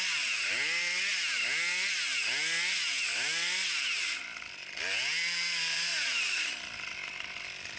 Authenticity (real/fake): real